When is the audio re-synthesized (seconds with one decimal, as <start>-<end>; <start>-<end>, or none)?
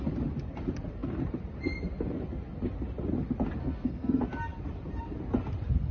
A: 3.6-4.2